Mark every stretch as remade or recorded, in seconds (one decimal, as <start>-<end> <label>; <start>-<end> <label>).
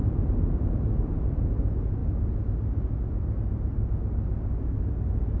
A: 0.0-5.4 recorded